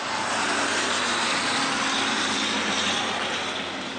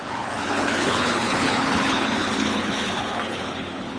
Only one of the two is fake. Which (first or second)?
second